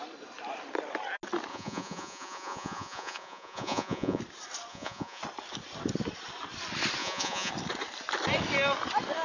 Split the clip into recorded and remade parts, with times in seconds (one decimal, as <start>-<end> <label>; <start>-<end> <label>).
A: 0.0-1.5 recorded; 1.5-4.2 remade; 4.2-4.7 recorded; 4.7-5.2 remade; 5.2-7.0 recorded; 7.0-7.5 remade; 7.5-9.2 recorded